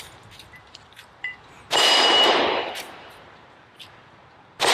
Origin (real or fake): fake